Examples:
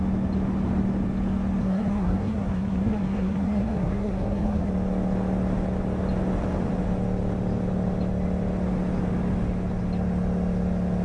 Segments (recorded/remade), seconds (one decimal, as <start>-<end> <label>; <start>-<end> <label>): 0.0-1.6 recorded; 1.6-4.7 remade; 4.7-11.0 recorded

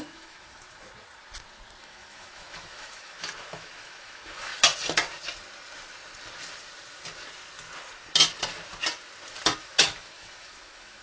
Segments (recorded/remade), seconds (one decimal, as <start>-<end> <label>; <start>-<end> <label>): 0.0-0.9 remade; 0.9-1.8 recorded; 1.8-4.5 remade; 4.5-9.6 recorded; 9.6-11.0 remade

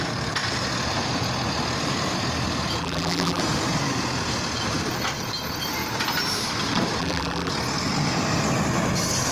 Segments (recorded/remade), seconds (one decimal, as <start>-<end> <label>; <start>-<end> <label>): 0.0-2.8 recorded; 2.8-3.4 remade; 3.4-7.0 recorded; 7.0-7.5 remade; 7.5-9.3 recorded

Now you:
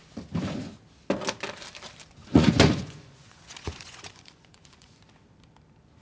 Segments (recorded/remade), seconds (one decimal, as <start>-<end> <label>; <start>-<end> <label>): 0.0-2.2 recorded; 2.2-5.0 remade; 5.0-6.0 recorded